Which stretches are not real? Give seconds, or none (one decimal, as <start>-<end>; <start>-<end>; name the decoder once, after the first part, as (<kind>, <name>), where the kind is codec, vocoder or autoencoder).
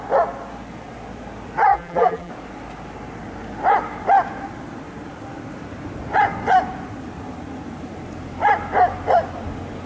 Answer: 1.7-2.3 (vocoder, BigVGAN v2)